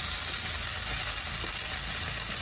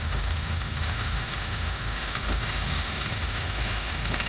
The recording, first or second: first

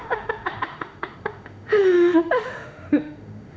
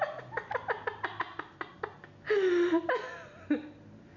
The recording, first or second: second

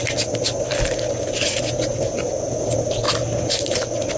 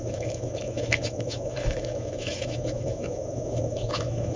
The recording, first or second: first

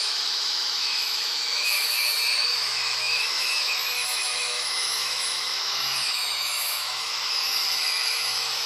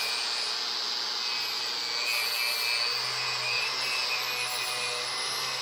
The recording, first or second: second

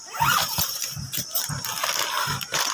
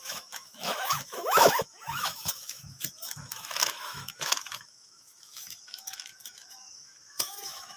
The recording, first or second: first